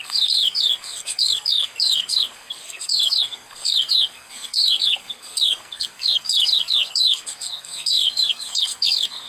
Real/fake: fake